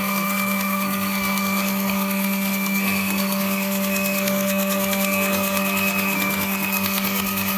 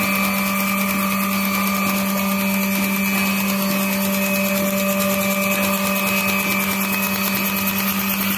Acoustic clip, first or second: second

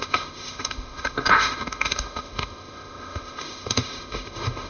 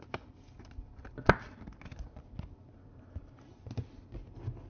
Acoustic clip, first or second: second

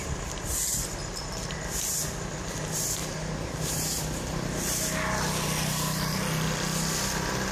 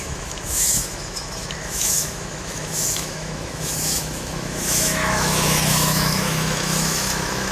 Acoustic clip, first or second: first